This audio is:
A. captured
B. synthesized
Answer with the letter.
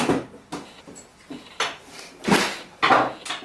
A